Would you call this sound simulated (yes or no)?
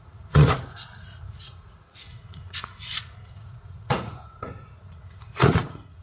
yes